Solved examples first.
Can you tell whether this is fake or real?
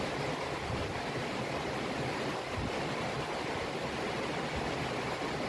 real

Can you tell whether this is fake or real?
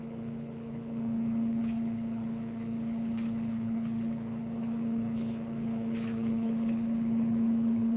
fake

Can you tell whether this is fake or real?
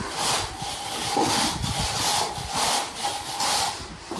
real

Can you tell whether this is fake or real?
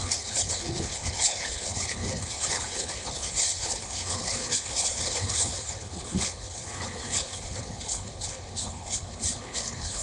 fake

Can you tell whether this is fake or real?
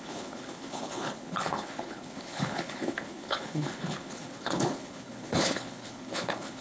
fake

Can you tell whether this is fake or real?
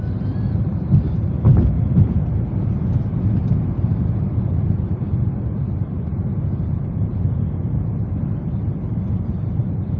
real